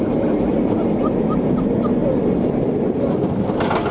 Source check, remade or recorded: recorded